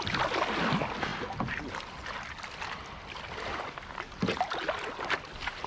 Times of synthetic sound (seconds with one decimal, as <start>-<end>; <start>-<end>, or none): none